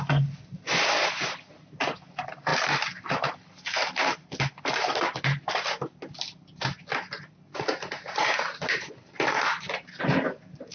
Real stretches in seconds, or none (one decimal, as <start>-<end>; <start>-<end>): 0.0-10.7